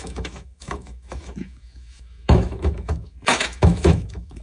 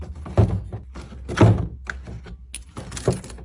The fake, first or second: first